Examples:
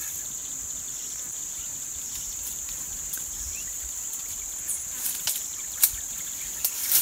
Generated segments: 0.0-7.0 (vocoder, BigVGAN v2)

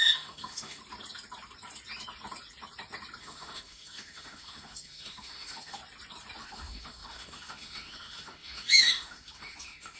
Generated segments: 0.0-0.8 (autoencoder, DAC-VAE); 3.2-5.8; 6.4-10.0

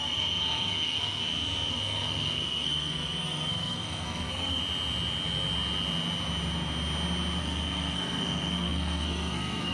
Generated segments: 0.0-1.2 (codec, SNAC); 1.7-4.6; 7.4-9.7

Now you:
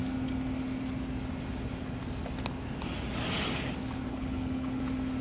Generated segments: 4.1-4.8 (codec, HILCodec)

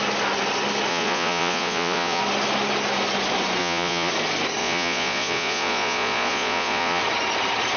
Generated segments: 0.9-2.2 (vocoder, Vocos); 3.6-4.1; 4.6-7.0

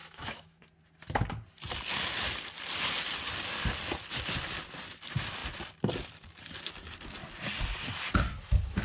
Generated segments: 0.0-0.6 (autoencoder, DAC-VAE)

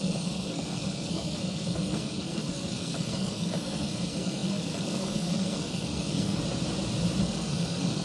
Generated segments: 0.0-6.4 (codec, SNAC); 7.2-8.0

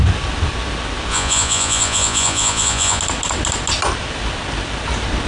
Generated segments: 1.1-3.0 (vocoder, Vocos)